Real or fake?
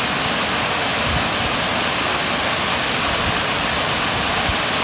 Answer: real